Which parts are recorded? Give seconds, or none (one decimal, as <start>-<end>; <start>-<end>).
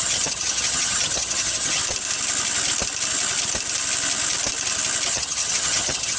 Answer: 1.8-5.1